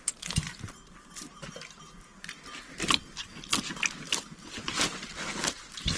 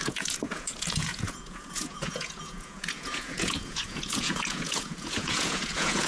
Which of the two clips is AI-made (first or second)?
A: second